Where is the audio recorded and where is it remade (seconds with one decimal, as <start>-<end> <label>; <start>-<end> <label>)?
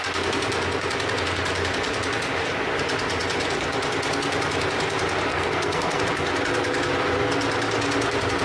0.0-5.3 recorded; 5.3-6.0 remade; 6.0-8.4 recorded